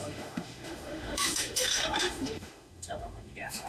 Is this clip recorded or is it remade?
remade